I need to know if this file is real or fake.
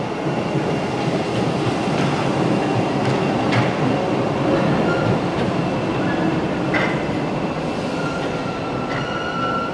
real